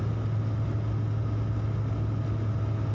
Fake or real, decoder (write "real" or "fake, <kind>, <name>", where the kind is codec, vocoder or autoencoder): real